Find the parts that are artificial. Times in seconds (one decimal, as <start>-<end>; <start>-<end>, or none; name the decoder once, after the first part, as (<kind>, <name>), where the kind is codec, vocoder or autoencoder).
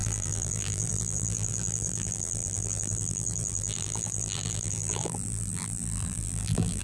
0.0-6.8 (vocoder, BigVGAN v2)